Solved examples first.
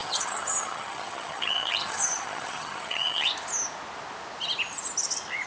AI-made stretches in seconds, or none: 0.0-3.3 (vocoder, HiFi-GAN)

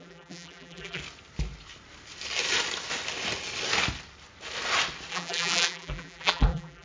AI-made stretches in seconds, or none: 0.0-1.0 (vocoder, BigVGAN v2); 5.1-6.8